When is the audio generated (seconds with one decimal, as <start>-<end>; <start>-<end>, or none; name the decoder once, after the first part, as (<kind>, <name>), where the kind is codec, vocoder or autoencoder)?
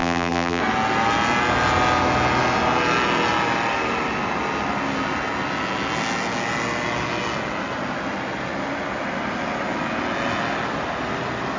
0.0-0.6 (vocoder, BigVGAN v2)